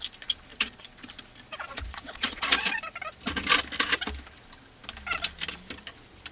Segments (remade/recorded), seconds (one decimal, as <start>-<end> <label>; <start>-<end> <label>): 0.0-0.5 recorded; 0.5-1.0 remade; 1.0-1.5 recorded; 1.5-2.7 remade; 2.7-6.3 recorded